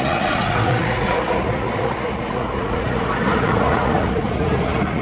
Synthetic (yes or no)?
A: yes